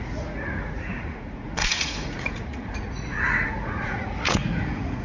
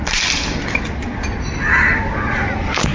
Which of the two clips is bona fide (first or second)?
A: second